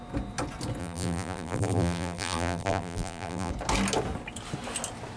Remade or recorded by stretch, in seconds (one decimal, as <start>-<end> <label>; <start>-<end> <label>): 0.0-0.8 recorded; 0.8-3.5 remade; 3.5-5.2 recorded

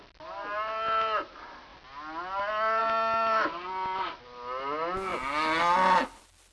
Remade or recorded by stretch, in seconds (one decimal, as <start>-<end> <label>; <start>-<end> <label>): 0.0-6.5 recorded

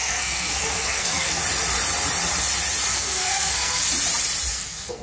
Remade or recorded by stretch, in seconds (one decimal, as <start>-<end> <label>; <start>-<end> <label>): 0.0-1.4 remade; 1.4-2.9 recorded; 2.9-3.8 remade; 3.8-4.5 recorded; 4.5-5.0 remade

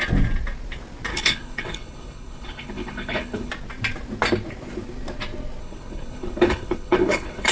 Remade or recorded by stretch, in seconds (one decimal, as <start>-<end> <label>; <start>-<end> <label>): 0.0-1.1 recorded; 1.1-3.5 remade; 3.5-5.6 recorded; 5.6-7.5 remade

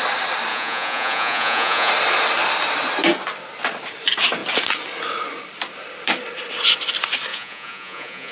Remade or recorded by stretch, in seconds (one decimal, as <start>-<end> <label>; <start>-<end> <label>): 0.0-0.5 recorded; 0.5-1.9 remade; 1.9-7.3 recorded; 7.3-8.3 remade

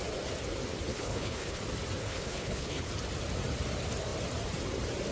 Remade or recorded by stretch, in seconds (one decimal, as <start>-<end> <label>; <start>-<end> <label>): 0.0-0.9 recorded; 0.9-1.6 remade; 1.6-2.0 recorded; 2.0-2.9 remade; 2.9-5.1 recorded

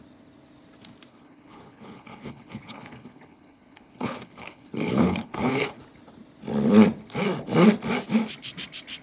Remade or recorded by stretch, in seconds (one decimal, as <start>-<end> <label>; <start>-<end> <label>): 0.0-1.1 recorded; 1.1-5.8 remade; 5.8-9.0 recorded